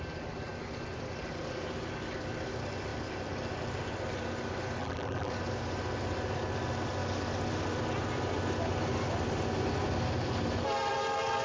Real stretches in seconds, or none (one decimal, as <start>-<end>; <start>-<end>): 0.0-4.8; 5.3-11.4